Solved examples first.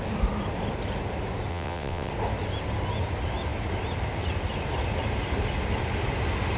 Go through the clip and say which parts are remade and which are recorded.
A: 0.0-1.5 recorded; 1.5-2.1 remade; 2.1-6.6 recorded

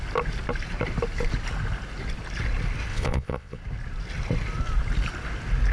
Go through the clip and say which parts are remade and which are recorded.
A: 0.0-2.9 recorded; 2.9-3.6 remade; 3.6-5.7 recorded